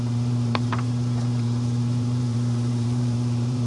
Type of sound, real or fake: fake